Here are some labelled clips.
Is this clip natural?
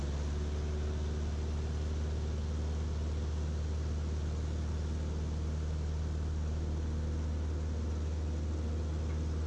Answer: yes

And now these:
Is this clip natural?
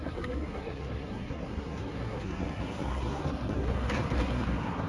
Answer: no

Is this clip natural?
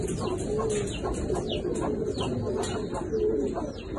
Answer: yes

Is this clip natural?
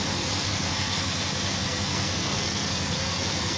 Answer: no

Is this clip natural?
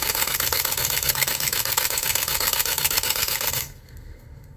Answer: no